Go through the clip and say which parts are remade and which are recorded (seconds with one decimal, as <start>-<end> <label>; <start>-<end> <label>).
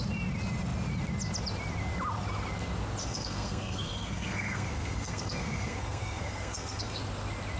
0.0-3.0 recorded; 3.0-7.0 remade; 7.0-7.6 recorded